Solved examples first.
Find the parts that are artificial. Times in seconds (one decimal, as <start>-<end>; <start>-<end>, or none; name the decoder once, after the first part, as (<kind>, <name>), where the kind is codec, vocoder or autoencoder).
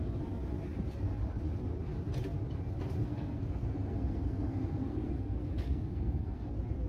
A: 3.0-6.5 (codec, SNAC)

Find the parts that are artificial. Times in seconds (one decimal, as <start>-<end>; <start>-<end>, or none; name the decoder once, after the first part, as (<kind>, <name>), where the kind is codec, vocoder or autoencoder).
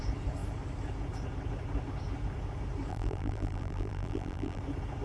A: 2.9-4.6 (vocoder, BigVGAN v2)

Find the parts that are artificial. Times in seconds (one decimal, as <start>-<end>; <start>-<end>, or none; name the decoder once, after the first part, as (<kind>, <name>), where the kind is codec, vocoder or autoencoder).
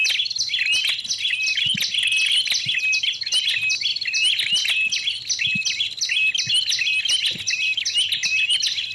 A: none